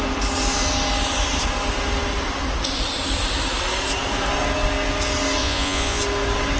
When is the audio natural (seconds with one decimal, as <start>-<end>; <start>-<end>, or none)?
0.0-5.4; 6.0-6.6

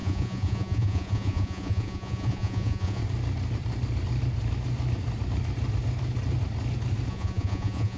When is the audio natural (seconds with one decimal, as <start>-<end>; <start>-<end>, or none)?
3.0-7.1

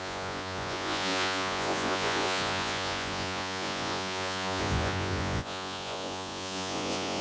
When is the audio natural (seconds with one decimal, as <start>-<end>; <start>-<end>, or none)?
none

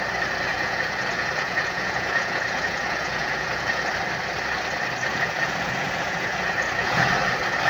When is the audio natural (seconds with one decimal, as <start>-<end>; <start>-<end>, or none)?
0.0-0.5; 3.9-5.1; 7.1-7.7